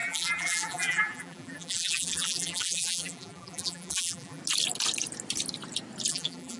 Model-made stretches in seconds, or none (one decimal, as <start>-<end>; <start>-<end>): 0.0-4.4; 6.1-6.6